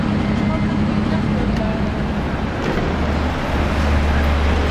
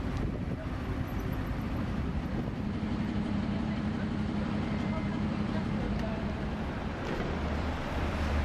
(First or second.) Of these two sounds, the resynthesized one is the second